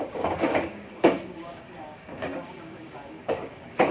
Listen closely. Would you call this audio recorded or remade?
remade